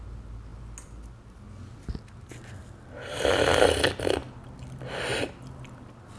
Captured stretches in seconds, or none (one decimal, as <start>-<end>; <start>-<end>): 0.0-6.2